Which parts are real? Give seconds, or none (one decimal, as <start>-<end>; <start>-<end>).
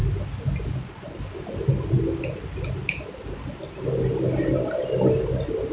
0.0-5.7